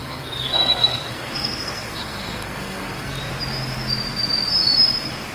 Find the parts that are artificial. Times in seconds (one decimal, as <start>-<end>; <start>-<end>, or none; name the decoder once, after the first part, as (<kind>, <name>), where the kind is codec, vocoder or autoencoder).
0.0-3.2 (codec, SNAC)